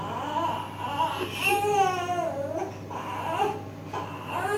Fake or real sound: real